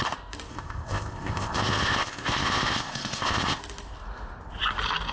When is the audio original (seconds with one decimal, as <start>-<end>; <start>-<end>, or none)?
0.0-0.5; 3.6-5.1